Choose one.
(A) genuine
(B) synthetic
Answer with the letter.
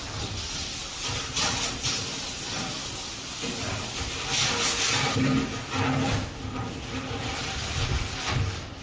A